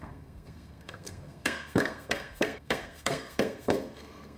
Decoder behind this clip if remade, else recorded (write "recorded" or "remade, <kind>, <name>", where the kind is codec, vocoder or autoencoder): remade, codec, SNAC